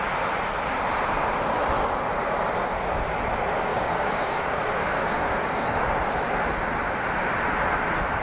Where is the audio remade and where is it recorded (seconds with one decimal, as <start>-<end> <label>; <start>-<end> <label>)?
0.0-3.7 recorded; 3.7-5.8 remade; 5.8-8.2 recorded